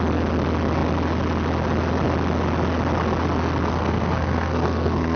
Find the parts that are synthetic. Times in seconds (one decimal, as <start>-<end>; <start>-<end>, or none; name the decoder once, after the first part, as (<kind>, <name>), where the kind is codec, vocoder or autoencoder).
3.7-5.2 (codec, SNAC)